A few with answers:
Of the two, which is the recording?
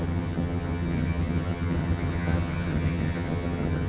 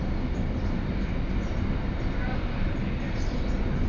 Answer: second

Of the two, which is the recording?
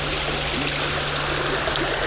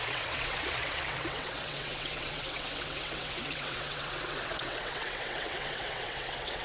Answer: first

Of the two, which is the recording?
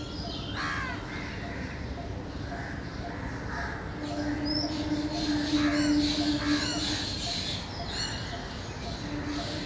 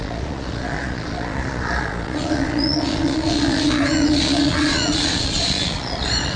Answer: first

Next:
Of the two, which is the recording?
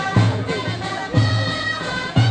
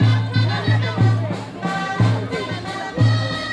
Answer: second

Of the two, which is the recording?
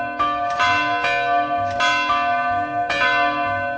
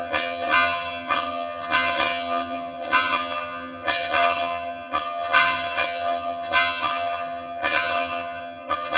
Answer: first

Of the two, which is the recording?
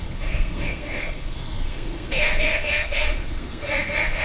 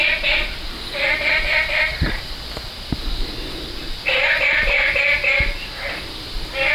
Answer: second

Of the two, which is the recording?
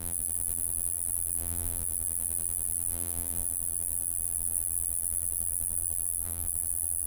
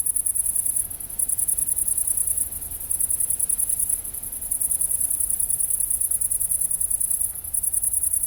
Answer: second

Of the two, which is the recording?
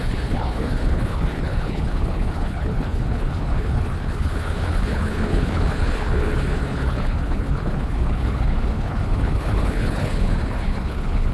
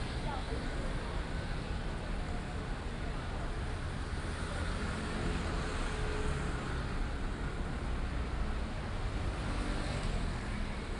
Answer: second